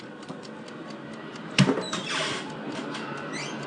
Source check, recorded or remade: recorded